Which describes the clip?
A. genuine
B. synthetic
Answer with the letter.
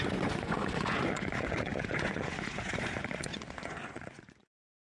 B